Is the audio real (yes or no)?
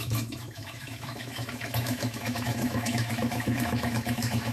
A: no